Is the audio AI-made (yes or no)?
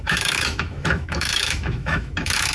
yes